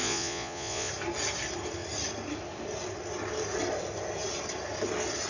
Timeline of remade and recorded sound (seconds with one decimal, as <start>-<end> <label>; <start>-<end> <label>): 0.0-0.9 remade; 0.9-5.3 recorded

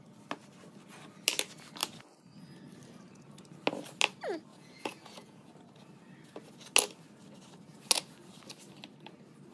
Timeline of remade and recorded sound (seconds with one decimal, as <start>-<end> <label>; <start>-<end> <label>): 0.0-4.5 recorded; 4.5-5.5 remade; 5.5-9.5 recorded

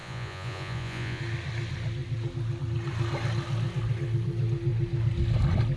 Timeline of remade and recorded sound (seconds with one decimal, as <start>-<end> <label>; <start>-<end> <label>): 0.0-1.2 remade; 1.2-5.8 recorded

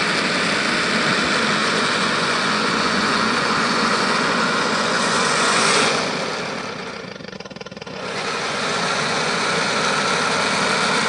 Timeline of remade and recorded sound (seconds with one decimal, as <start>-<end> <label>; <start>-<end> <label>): 0.0-1.6 recorded; 1.6-6.1 remade; 6.1-6.8 recorded; 6.8-9.8 remade; 9.8-11.1 recorded

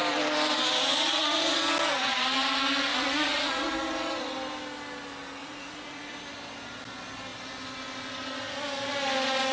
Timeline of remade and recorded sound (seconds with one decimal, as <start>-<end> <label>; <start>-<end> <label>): 0.0-1.1 recorded; 1.1-1.6 remade; 1.6-2.9 recorded; 2.9-3.7 remade; 3.7-5.4 recorded; 5.4-6.2 remade; 6.2-9.5 recorded